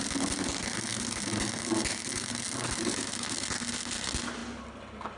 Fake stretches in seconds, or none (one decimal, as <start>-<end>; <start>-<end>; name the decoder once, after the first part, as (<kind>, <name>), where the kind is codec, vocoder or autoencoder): none

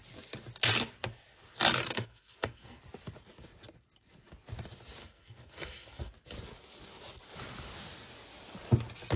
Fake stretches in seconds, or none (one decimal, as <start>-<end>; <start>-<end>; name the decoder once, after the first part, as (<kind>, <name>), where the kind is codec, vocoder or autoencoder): 1.8-2.8 (codec, SNAC); 5.0-6.1

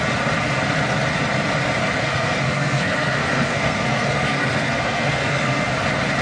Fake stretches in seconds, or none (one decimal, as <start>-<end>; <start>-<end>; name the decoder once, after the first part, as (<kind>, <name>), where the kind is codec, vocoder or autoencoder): 2.0-5.7 (codec, SNAC)

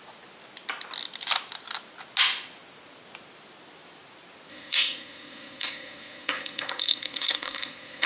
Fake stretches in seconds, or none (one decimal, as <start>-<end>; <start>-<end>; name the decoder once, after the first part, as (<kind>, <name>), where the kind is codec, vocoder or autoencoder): 4.5-8.1 (codec, SNAC)